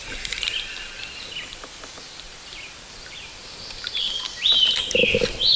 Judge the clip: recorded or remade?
recorded